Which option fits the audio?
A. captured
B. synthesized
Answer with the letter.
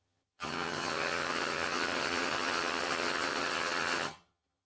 B